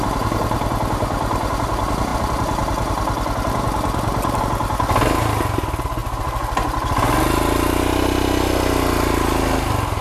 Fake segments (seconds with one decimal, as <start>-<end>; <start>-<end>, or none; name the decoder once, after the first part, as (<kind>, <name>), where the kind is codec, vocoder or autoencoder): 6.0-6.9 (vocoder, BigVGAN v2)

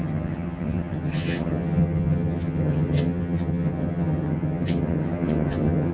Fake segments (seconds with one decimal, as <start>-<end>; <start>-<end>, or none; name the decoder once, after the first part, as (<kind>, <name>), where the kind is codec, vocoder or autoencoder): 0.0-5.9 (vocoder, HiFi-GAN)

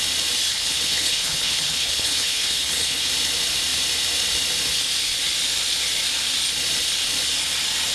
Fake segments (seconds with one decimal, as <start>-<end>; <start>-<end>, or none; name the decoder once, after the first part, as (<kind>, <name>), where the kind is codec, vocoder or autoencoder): 0.5-3.1 (codec, HILCodec)

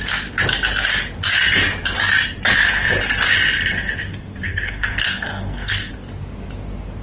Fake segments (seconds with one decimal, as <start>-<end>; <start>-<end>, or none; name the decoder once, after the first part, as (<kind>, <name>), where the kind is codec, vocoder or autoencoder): 4.1-5.9 (codec, SNAC)

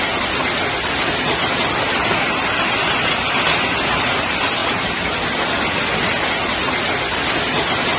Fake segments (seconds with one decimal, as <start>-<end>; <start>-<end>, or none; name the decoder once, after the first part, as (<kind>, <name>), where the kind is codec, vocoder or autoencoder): none

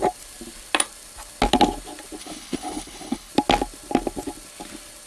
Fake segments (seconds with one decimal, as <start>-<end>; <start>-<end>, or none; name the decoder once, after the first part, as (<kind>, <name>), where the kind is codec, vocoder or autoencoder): 2.2-3.3 (codec, HILCodec)

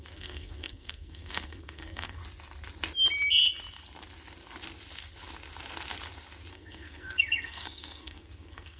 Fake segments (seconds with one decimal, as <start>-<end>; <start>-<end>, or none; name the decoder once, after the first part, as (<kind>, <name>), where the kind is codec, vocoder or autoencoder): 0.0-2.2 (codec, SNAC); 6.5-8.8